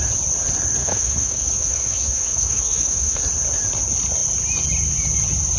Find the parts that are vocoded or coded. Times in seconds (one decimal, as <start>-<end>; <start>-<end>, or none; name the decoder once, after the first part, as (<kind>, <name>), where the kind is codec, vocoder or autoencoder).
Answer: 0.8-3.2 (autoencoder, DAC-VAE)

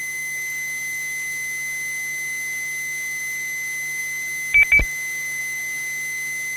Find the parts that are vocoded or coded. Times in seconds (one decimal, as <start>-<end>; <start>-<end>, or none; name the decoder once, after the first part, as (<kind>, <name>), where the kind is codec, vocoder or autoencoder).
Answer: none

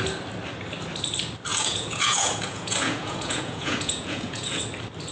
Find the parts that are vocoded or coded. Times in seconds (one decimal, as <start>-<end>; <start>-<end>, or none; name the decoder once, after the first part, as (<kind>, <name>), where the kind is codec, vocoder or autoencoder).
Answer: 1.5-4.6 (vocoder, Vocos)

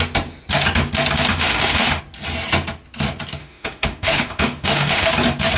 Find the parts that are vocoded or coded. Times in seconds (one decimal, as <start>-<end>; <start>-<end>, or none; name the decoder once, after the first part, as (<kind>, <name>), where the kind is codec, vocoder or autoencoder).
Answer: 1.3-2.0 (autoencoder, DAC-VAE); 3.4-5.1

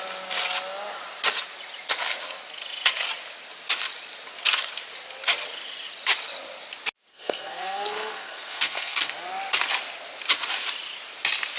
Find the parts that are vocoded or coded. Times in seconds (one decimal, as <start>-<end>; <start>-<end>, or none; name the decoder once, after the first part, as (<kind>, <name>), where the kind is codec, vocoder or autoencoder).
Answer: 7.1-9.1 (codec, SNAC)

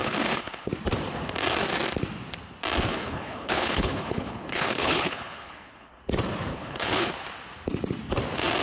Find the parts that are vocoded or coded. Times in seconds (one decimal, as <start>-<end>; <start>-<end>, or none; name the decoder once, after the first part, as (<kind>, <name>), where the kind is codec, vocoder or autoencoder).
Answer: 0.0-0.7 (codec, HILCodec); 2.9-6.0; 6.5-7.1

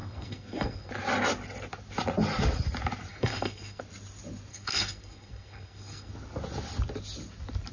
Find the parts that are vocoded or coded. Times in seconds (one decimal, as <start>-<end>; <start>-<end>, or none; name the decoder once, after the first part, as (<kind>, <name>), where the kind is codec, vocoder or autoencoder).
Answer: 0.0-0.9 (codec, SNAC); 3.1-3.8; 4.5-6.1